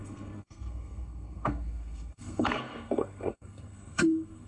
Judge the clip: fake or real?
fake